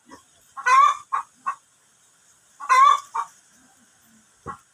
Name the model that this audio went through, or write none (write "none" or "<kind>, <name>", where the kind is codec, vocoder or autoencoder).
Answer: none